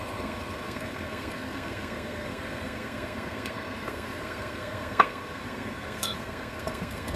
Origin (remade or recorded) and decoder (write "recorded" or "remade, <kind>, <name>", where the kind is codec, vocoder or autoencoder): remade, codec, SNAC